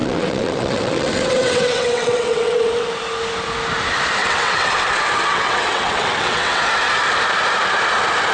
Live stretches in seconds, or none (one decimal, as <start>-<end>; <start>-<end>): 2.9-4.2; 4.7-5.3; 6.6-8.3

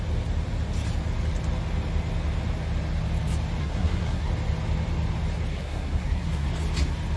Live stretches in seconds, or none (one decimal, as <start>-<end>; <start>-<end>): 0.0-3.6; 4.3-5.5; 6.5-7.2

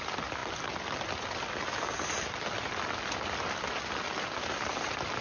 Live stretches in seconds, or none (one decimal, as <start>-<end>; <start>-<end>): 0.0-5.2

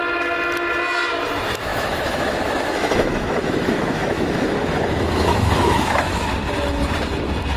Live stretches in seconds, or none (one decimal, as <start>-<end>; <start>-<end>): 0.0-1.7; 6.3-7.6